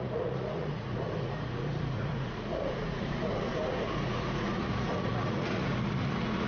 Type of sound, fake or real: fake